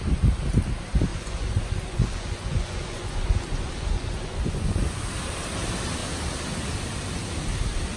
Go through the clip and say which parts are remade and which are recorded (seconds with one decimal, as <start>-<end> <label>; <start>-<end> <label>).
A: 0.0-1.1 recorded; 1.1-5.0 remade; 5.0-8.0 recorded